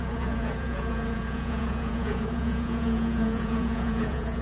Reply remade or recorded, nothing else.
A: remade